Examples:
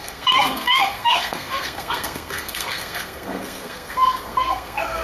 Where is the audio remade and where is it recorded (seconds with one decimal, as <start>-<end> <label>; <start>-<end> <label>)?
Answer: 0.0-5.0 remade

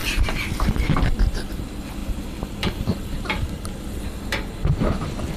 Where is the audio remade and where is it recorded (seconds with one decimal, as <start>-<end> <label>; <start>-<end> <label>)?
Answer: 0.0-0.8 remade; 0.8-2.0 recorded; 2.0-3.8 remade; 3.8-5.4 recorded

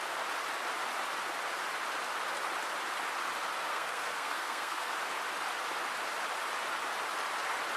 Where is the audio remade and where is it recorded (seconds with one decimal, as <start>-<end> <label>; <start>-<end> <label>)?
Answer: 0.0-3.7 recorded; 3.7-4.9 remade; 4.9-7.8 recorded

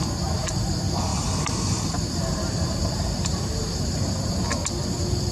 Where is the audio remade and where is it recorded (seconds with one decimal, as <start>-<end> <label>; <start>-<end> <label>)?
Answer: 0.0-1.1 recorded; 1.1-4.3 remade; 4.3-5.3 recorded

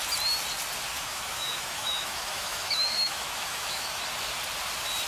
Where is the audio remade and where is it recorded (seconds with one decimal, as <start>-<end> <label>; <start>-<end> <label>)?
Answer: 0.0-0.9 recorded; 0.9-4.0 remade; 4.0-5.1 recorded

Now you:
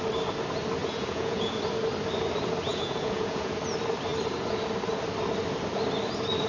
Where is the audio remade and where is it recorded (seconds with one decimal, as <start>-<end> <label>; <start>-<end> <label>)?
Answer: 0.0-0.8 recorded; 0.8-1.6 remade; 1.6-2.7 recorded; 2.7-3.6 remade; 3.6-6.5 recorded